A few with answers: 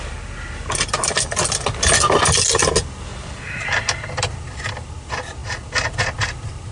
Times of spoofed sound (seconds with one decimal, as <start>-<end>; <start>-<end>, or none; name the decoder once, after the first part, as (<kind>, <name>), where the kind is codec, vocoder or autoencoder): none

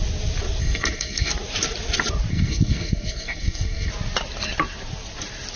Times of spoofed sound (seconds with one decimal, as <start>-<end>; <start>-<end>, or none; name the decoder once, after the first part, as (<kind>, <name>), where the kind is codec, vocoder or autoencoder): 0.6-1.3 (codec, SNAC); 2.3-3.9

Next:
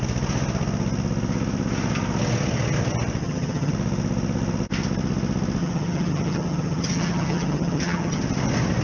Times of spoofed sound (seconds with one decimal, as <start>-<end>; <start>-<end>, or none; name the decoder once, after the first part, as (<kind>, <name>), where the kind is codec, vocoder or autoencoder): 3.2-3.7 (vocoder, HiFi-GAN); 5.6-8.2